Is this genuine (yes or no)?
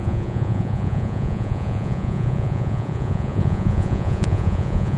no